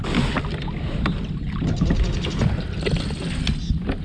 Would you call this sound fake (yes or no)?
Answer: no